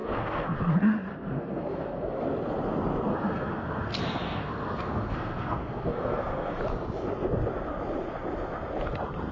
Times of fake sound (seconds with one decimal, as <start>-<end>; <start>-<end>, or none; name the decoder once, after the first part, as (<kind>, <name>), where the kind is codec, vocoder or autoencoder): 0.0-0.6 (codec, SNAC); 1.1-2.2; 3.1-6.6